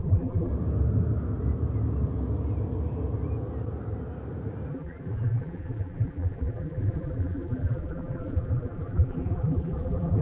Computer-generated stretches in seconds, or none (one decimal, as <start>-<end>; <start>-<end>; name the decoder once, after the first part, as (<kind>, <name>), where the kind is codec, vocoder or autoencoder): 0.0-0.5 (vocoder, BigVGAN v2); 4.7-10.2